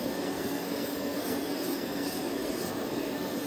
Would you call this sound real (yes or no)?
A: no